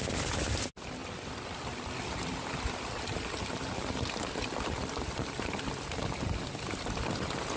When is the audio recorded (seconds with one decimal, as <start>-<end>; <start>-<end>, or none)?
0.0-1.0; 5.6-7.6